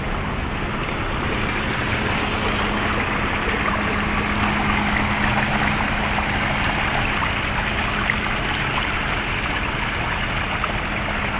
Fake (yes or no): no